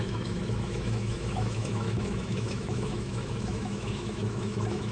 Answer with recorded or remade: remade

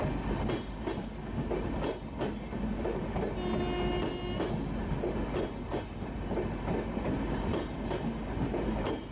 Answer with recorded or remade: recorded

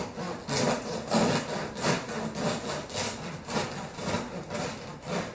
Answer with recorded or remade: recorded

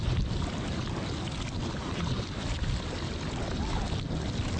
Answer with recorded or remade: recorded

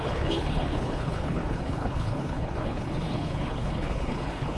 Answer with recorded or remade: remade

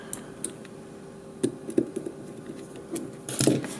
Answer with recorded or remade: recorded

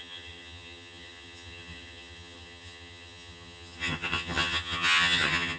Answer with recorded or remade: remade